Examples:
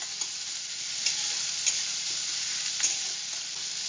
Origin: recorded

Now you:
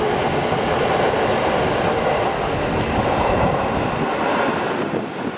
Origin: recorded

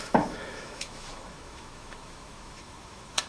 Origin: remade